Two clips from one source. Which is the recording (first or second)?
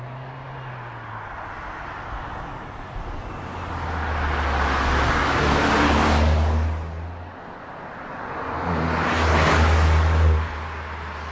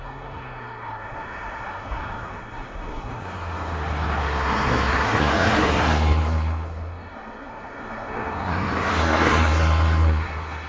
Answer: first